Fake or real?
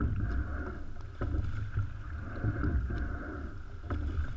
real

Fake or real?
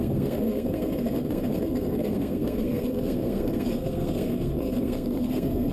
fake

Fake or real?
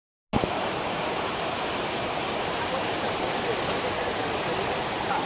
real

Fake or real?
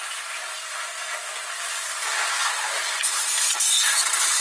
real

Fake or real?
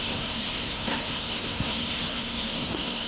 fake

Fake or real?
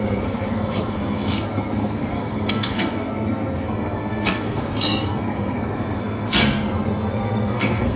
fake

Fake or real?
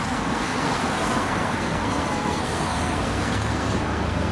fake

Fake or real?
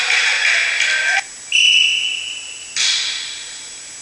real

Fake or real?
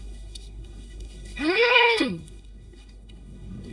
fake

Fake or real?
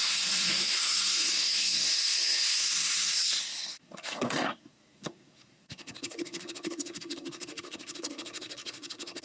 fake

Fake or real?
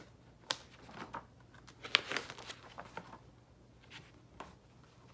real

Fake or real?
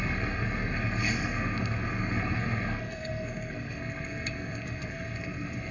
fake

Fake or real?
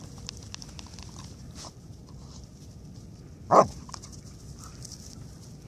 real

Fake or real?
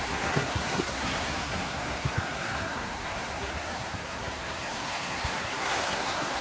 fake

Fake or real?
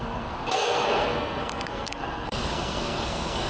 fake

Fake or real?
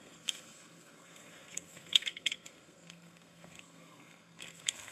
fake